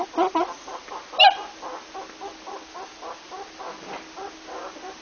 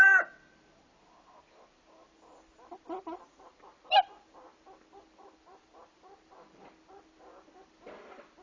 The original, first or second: first